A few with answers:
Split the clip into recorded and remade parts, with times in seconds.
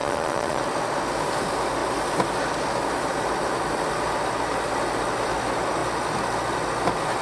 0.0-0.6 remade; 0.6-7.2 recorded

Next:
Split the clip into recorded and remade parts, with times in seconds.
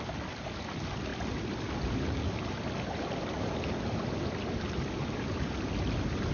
0.0-6.3 recorded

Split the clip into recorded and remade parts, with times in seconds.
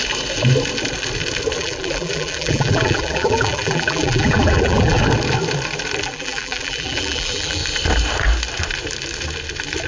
0.0-1.6 recorded; 1.6-5.0 remade; 5.0-6.0 recorded; 6.0-7.6 remade; 7.6-9.9 recorded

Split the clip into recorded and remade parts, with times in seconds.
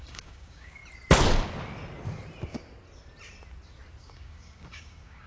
0.0-0.8 remade; 0.8-4.0 recorded; 4.0-5.3 remade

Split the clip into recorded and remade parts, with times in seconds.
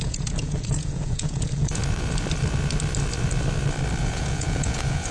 0.0-1.8 remade; 1.8-4.0 recorded; 4.0-5.1 remade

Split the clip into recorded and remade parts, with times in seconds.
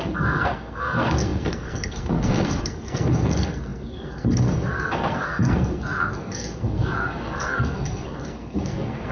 0.0-9.1 remade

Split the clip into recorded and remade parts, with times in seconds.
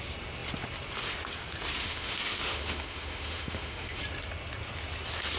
0.0-1.8 recorded; 1.8-4.0 remade; 4.0-5.4 recorded